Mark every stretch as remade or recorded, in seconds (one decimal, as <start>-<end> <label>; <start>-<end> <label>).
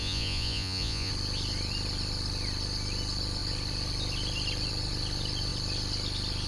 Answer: 0.0-1.1 remade; 1.1-6.5 recorded